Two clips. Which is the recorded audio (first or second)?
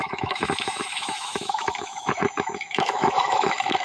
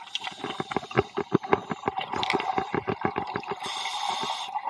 second